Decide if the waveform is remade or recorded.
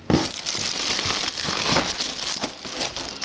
recorded